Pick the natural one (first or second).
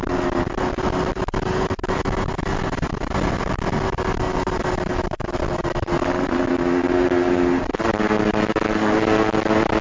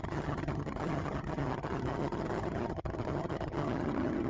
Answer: first